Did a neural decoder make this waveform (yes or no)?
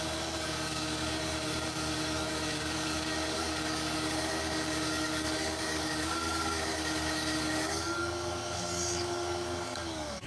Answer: yes